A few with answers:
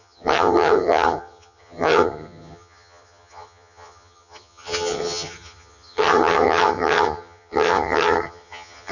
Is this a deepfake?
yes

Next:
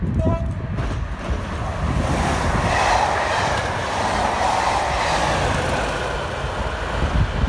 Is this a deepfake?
no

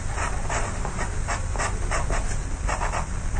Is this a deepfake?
no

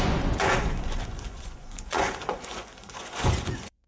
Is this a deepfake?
yes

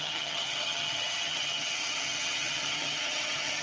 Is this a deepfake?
yes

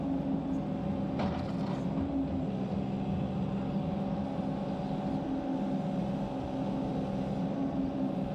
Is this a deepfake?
no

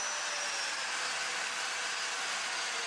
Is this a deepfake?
no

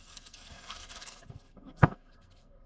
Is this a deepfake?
yes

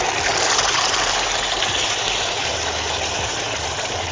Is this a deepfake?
no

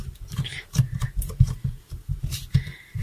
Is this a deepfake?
yes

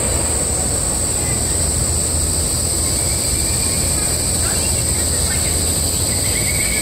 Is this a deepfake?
no